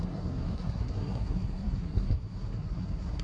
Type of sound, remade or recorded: remade